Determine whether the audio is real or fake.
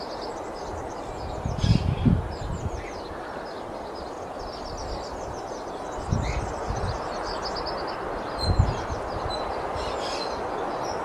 real